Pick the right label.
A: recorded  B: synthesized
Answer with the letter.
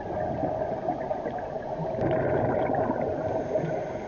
A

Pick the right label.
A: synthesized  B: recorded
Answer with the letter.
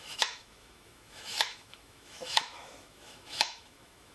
A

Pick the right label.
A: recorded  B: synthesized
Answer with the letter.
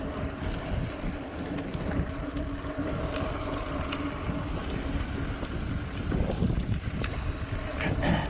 A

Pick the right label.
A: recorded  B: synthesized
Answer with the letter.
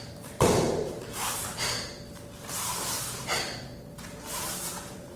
A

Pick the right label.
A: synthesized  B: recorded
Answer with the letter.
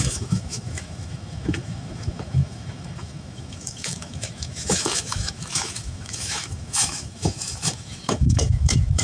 A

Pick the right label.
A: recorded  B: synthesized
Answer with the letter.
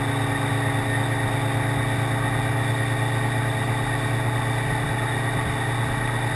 A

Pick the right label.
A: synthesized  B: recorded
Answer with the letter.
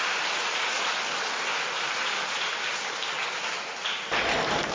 B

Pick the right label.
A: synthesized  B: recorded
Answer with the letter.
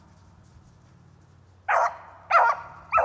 B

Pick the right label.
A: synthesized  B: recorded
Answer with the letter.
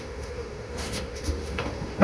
A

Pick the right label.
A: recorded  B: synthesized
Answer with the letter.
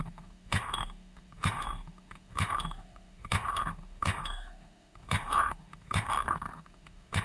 B